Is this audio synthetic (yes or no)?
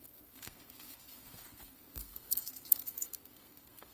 yes